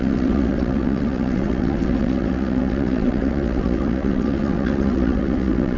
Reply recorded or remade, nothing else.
remade